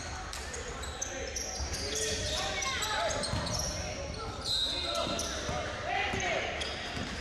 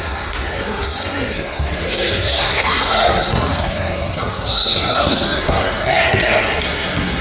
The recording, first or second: first